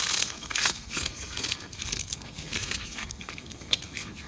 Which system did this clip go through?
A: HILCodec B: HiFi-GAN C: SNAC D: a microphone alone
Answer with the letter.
C